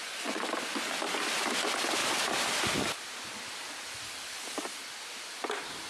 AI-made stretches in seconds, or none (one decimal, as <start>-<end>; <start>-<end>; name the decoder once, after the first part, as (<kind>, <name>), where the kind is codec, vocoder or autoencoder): 0.0-0.5 (vocoder, Vocos)